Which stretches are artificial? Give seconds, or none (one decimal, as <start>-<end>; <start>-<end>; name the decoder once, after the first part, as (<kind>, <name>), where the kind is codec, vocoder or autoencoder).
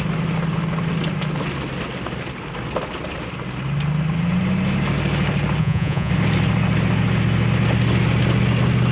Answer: 5.6-6.1 (vocoder, Vocos)